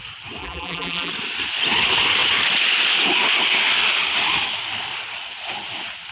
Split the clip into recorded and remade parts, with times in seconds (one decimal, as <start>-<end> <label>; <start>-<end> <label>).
0.0-0.4 recorded; 0.4-1.1 remade; 1.1-6.1 recorded